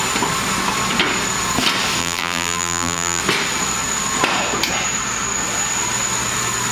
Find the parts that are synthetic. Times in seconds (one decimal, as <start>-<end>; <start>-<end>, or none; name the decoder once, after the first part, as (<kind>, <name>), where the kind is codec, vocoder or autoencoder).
2.0-3.2 (vocoder, BigVGAN v2)